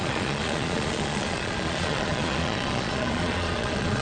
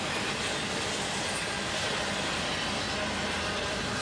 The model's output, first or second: first